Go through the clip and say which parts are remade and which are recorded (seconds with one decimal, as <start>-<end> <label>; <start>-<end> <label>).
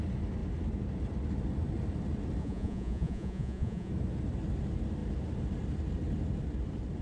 0.0-2.4 recorded; 2.4-3.9 remade; 3.9-7.0 recorded